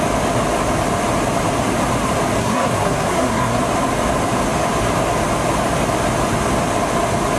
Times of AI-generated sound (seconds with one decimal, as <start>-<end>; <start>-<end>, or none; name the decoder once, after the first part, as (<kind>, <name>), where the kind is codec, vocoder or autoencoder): 2.4-3.6 (codec, SNAC)